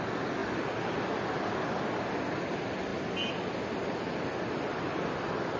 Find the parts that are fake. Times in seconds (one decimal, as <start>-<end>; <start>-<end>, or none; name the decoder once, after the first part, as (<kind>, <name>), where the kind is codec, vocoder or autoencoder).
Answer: none